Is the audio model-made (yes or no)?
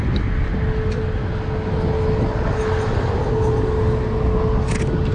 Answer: no